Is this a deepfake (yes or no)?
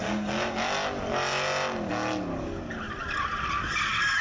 no